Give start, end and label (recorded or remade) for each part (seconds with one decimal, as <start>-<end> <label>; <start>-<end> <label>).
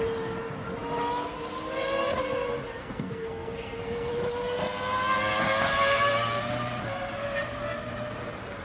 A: 0.0-2.8 recorded; 2.8-4.1 remade; 4.1-8.6 recorded